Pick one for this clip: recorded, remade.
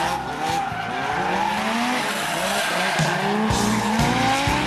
recorded